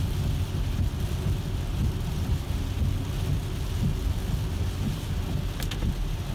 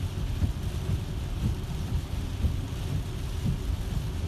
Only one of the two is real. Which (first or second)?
first